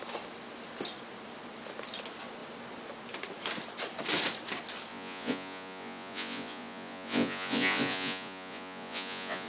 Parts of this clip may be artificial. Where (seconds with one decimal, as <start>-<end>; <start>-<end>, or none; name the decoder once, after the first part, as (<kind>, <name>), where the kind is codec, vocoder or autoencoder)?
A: 4.9-9.5 (vocoder, Vocos)